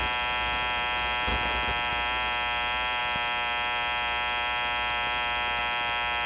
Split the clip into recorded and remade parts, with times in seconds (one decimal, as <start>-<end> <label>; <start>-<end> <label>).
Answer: 0.0-6.3 recorded